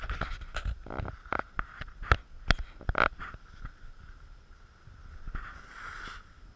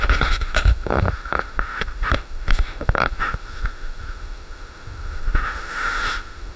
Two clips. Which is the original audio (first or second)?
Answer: first